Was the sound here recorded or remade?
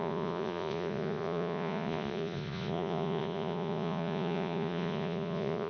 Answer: remade